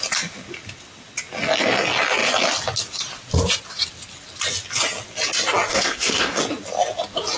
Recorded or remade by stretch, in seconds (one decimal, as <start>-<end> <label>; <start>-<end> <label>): 0.0-5.7 recorded; 5.7-6.4 remade; 6.4-7.4 recorded